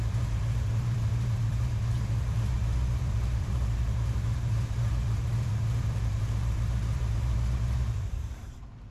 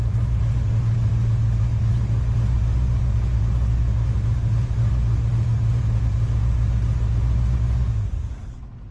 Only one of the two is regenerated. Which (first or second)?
first